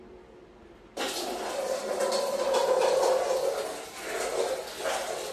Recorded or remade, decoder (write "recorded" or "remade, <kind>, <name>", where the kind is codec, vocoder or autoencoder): recorded